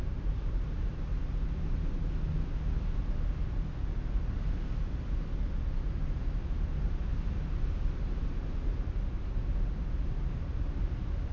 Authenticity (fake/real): real